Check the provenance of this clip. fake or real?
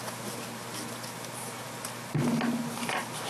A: real